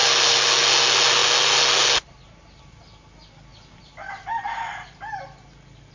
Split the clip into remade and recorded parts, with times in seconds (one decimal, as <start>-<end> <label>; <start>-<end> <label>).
0.0-3.5 recorded; 3.5-5.1 remade; 5.1-5.9 recorded